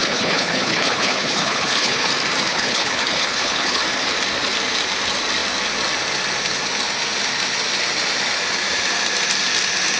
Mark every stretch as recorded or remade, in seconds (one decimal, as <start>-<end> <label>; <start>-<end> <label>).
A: 0.0-2.1 remade; 2.1-2.5 recorded; 2.5-3.8 remade; 3.8-10.0 recorded